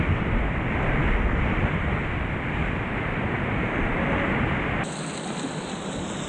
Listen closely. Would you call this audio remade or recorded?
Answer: recorded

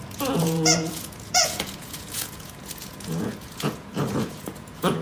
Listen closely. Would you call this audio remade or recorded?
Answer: remade